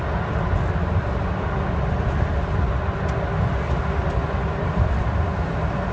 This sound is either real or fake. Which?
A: real